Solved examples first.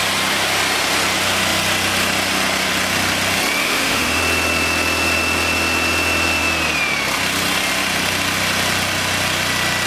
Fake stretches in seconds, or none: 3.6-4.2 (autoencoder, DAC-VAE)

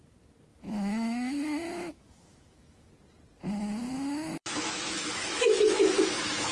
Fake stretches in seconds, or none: 0.5-2.9 (autoencoder, DAC-VAE); 3.9-6.5

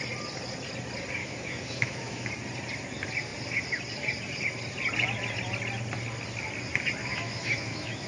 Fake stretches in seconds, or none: 1.2-2.3 (autoencoder, DAC-VAE); 7.0-8.1

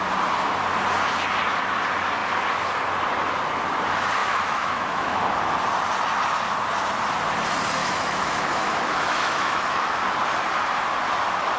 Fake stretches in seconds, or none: 4.2-5.2 (autoencoder, DAC-VAE); 7.8-10.0